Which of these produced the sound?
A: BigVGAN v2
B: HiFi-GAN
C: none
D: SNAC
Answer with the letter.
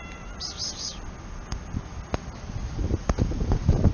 C